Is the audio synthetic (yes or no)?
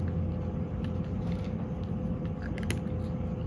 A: no